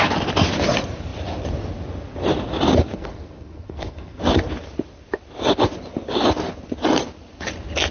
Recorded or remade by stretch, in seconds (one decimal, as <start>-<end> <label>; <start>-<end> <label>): 0.0-2.8 recorded; 2.8-4.2 remade; 4.2-7.9 recorded